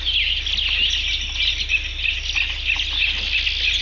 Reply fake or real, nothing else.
real